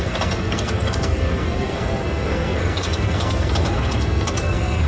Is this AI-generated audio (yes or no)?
yes